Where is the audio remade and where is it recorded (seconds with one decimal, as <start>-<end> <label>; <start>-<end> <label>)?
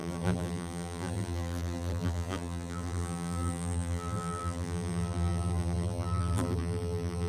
0.0-7.3 remade